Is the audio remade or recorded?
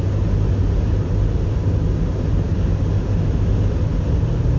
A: recorded